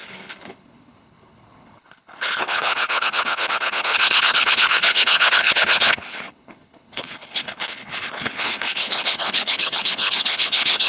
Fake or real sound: fake